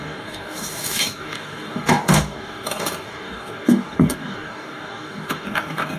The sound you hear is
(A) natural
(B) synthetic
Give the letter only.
B